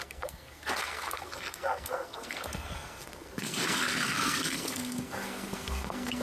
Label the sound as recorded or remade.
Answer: remade